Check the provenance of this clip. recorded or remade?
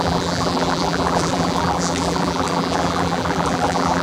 remade